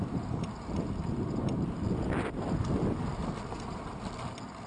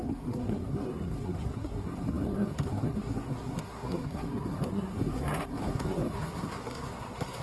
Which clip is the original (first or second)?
first